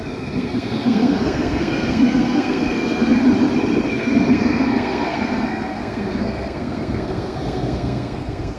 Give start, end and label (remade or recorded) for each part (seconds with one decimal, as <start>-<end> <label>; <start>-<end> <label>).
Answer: 0.0-3.2 remade; 3.2-3.9 recorded; 3.9-8.6 remade